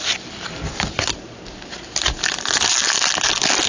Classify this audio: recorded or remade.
recorded